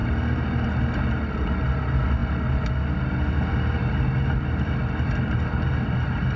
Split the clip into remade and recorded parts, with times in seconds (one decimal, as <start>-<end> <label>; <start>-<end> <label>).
0.0-6.4 recorded